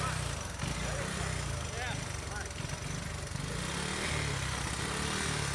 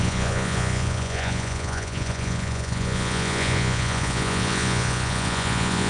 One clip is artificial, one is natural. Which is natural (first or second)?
first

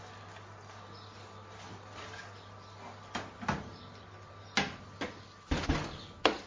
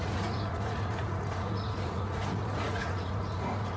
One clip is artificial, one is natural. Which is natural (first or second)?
first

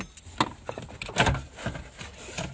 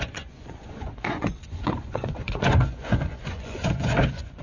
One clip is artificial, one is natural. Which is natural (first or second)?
first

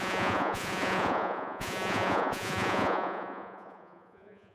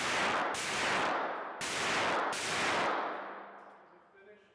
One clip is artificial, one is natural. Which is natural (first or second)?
second